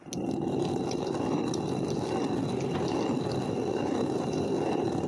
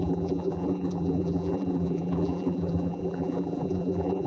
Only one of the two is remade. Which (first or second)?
second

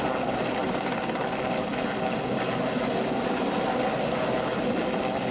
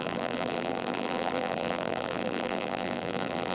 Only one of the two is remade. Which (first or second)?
second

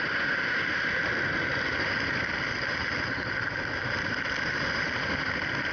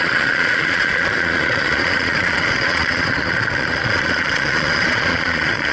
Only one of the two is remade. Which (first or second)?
second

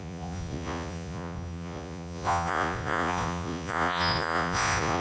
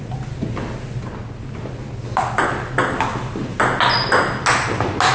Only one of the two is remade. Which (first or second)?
first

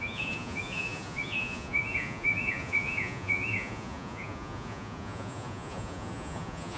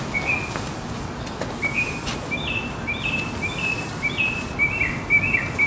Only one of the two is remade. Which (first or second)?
first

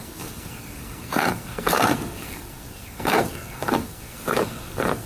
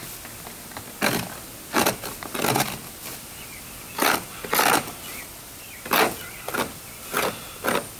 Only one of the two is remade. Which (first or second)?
first